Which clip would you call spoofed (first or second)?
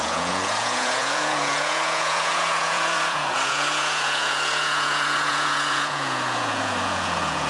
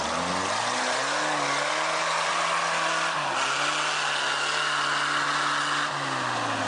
first